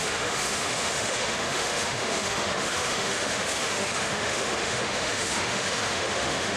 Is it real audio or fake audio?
fake